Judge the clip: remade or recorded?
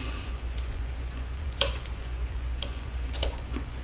remade